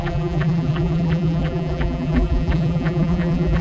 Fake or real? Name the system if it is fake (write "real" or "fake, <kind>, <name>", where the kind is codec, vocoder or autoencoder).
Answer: fake, vocoder, BigVGAN v2